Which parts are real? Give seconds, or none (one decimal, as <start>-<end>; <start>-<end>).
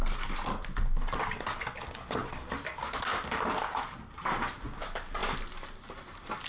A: 0.0-6.5